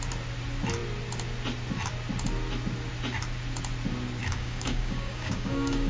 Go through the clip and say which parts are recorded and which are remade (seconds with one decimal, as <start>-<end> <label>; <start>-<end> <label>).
0.0-4.2 recorded; 4.2-5.9 remade